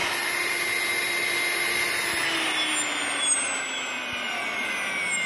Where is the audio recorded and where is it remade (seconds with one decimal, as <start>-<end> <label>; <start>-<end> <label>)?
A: 0.0-5.3 recorded

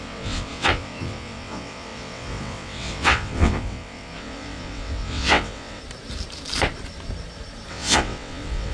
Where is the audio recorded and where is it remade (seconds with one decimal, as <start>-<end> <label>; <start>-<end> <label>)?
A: 0.0-5.8 remade; 5.8-7.7 recorded; 7.7-8.7 remade

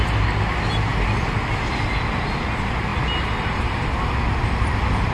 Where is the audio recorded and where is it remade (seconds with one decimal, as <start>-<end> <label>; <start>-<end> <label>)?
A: 0.0-5.1 recorded